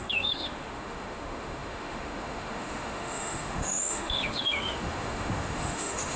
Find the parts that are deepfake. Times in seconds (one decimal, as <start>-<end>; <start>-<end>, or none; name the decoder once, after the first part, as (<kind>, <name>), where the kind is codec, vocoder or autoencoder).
0.0-6.2 (autoencoder, DAC-VAE)